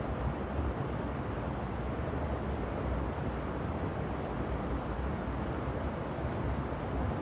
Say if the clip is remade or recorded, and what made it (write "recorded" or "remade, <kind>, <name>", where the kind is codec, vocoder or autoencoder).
recorded